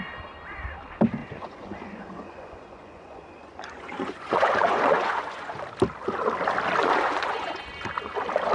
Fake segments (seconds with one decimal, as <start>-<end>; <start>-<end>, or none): 1.2-5.6; 6.8-7.7